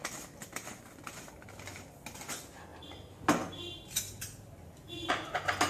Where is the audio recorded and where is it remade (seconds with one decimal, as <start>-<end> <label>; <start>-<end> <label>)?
0.0-5.7 recorded